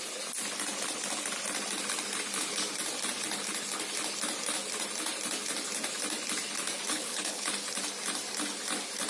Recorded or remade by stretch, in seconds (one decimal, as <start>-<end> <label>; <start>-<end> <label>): 0.0-6.9 recorded; 6.9-7.5 remade; 7.5-9.1 recorded